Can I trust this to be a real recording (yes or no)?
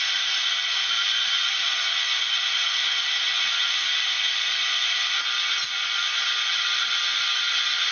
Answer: yes